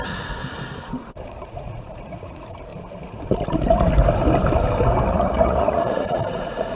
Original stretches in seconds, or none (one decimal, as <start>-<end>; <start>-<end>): 0.4-1.1; 2.7-5.1